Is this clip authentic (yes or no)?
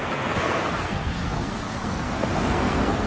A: no